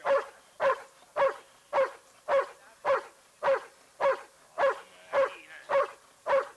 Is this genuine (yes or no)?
yes